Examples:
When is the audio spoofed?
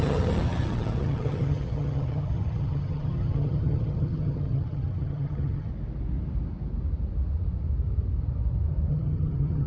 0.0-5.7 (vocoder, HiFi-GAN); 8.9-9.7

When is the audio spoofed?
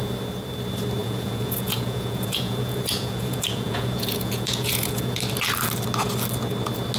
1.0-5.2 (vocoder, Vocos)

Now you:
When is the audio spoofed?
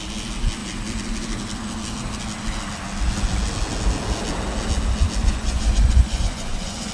5.2-6.9 (vocoder, Vocos)